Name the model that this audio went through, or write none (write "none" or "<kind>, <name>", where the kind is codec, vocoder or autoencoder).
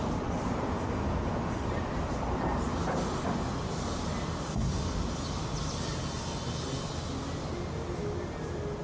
none